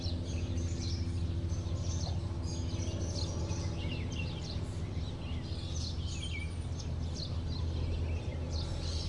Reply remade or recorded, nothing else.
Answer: recorded